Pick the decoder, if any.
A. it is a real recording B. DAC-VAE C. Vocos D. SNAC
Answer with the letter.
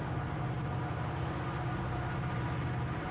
A